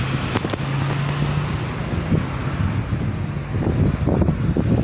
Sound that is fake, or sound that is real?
real